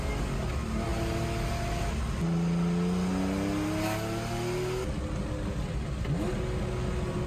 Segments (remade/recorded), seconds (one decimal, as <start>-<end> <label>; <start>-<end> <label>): 0.0-7.3 recorded